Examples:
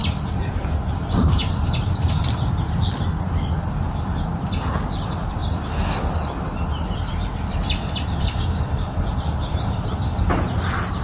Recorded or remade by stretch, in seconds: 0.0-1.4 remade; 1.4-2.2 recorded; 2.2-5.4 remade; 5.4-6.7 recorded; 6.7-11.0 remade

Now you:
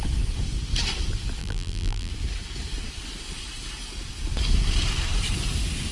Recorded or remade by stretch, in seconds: 0.0-1.4 recorded; 1.4-2.1 remade; 2.1-5.9 recorded

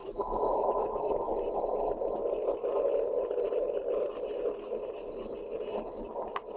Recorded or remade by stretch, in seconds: 0.0-1.1 remade; 1.1-6.6 recorded

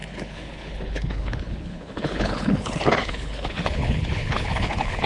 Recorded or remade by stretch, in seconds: 0.0-5.1 remade

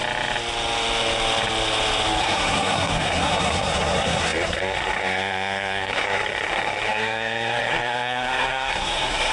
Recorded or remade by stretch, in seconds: 0.0-2.2 recorded; 2.2-9.3 remade